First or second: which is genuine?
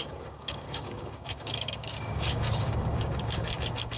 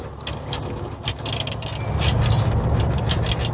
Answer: second